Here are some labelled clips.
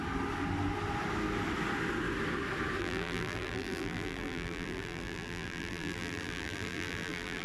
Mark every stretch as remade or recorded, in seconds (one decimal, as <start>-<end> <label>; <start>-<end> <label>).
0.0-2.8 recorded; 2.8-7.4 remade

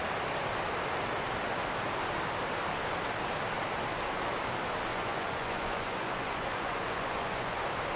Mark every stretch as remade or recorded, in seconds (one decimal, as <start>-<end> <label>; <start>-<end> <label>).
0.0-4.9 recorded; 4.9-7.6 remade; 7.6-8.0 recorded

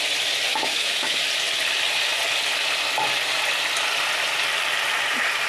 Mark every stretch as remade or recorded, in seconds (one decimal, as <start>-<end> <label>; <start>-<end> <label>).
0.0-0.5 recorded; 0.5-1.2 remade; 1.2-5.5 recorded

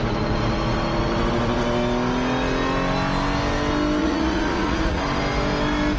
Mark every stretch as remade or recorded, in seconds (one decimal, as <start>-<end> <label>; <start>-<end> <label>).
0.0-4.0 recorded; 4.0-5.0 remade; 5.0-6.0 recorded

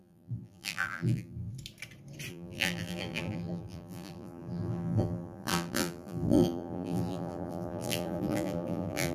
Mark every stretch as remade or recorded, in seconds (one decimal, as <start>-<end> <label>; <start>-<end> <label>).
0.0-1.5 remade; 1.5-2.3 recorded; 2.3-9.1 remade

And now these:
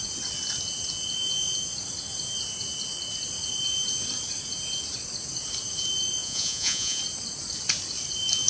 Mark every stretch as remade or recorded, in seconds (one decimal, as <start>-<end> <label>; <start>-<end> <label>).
0.0-6.2 recorded; 6.2-7.0 remade; 7.0-8.5 recorded

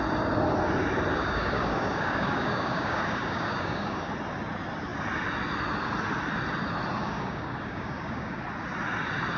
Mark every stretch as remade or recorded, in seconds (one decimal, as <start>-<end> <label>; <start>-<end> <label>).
0.0-1.1 recorded; 1.1-4.1 remade; 4.1-7.0 recorded; 7.0-8.4 remade; 8.4-9.4 recorded

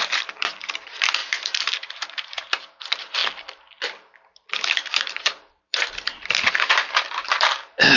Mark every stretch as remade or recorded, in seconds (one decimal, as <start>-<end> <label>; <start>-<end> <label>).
0.0-3.2 remade; 3.2-4.9 recorded; 4.9-8.0 remade